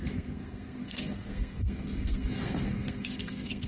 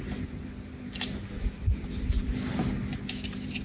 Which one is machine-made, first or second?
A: first